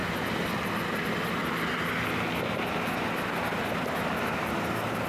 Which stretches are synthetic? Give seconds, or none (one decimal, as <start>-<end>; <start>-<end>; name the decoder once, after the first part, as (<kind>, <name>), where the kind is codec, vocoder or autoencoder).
none